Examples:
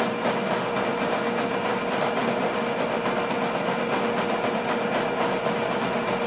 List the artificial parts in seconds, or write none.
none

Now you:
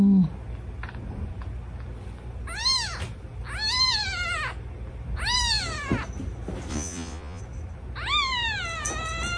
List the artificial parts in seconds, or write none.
6.7-7.4 (vocoder, Vocos)

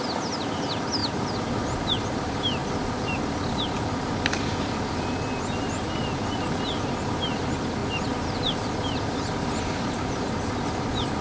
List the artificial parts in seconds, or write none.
none

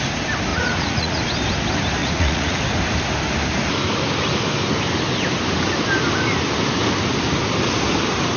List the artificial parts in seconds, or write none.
0.5-1.2 (vocoder, Vocos); 2.0-2.6

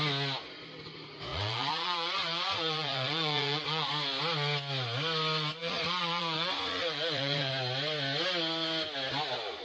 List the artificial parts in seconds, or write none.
1.3-3.9 (vocoder, Vocos); 5.6-7.5

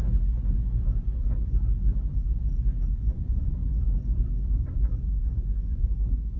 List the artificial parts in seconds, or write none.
3.0-3.6 (vocoder, Vocos); 4.6-6.4